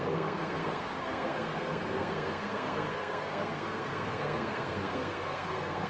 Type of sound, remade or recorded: remade